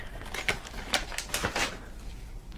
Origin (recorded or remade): recorded